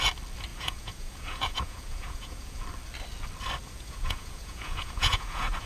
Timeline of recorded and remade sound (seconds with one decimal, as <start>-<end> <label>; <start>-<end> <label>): 0.0-0.5 recorded; 0.5-2.6 remade; 2.6-3.6 recorded; 3.6-5.7 remade

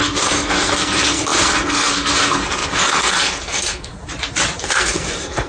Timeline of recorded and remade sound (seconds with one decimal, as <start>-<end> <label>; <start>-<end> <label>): 0.0-3.9 remade; 3.9-4.6 recorded; 4.6-5.5 remade

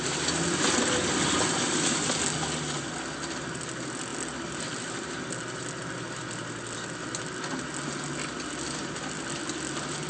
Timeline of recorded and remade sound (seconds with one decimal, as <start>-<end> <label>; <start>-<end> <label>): 0.0-10.1 recorded

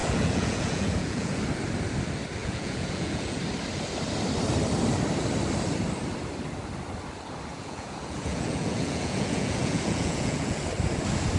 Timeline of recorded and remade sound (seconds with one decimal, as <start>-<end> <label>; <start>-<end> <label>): 0.0-1.4 remade; 1.4-2.4 recorded; 2.4-3.4 remade; 3.4-7.5 recorded; 7.5-10.6 remade; 10.6-11.4 recorded

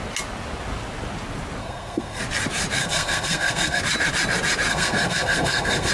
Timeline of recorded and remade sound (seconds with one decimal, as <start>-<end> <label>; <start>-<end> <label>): 0.0-1.6 recorded; 1.6-2.2 remade; 2.2-2.8 recorded; 2.8-3.8 remade; 3.8-4.7 recorded; 4.7-5.9 remade

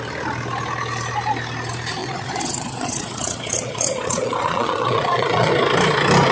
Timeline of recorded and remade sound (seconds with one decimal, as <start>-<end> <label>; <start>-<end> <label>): 0.0-2.0 recorded; 2.0-5.5 remade; 5.5-6.3 recorded

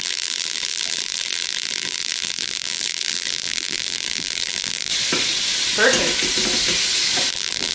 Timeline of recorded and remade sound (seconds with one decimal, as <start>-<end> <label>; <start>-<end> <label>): 0.0-4.9 remade; 4.9-7.3 recorded; 7.3-7.7 remade

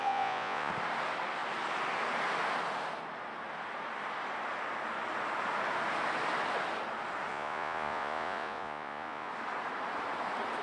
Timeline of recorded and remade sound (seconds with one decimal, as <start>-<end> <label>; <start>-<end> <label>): 0.0-0.7 remade; 0.7-7.3 recorded; 7.3-9.3 remade; 9.3-10.6 recorded